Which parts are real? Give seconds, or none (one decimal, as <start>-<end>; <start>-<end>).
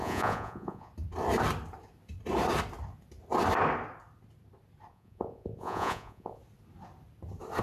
0.9-4.9; 6.4-7.6